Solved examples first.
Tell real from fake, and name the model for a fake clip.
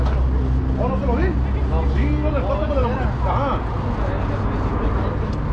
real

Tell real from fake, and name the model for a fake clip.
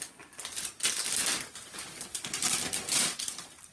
real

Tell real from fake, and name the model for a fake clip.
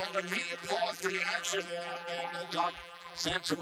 fake, vocoder, BigVGAN v2